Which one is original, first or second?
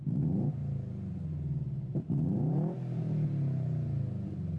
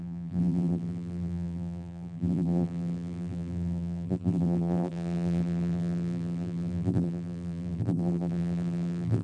first